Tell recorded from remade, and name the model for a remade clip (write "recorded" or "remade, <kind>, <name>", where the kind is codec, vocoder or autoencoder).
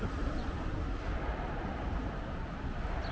recorded